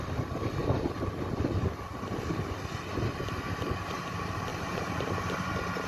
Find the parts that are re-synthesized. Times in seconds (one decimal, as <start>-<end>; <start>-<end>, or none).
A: 4.5-5.3